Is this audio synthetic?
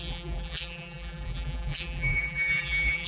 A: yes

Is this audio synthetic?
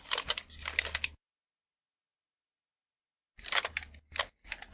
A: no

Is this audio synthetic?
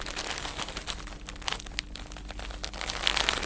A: no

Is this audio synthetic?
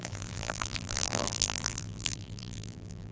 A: yes